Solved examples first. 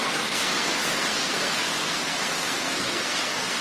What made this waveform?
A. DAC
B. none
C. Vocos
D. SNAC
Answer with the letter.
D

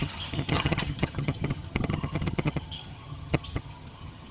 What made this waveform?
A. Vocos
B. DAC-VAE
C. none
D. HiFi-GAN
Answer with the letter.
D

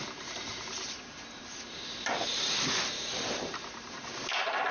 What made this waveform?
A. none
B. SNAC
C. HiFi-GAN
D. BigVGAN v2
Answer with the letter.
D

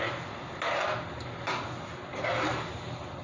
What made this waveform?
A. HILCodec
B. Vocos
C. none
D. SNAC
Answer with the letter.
C